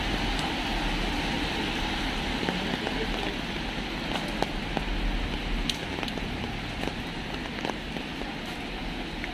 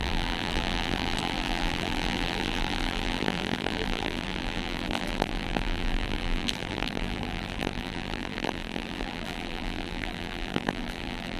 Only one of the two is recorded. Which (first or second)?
first